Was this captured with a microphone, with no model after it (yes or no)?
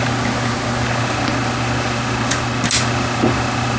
yes